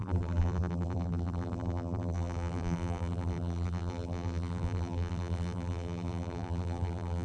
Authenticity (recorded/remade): remade